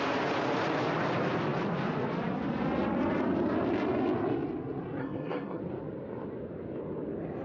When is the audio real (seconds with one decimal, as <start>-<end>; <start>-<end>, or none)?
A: 0.0-5.0; 5.6-7.4